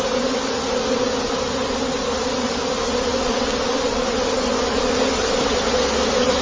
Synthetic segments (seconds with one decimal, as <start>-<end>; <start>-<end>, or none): none